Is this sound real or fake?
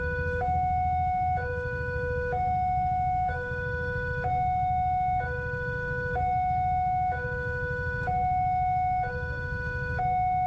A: fake